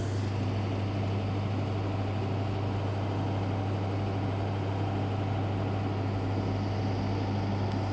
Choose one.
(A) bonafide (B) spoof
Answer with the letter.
A